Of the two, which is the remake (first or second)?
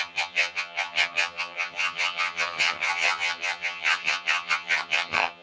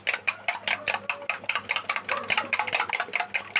first